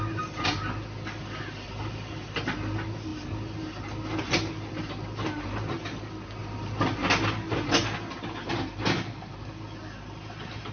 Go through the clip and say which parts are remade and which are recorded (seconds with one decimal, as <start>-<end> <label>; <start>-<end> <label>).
0.0-10.7 recorded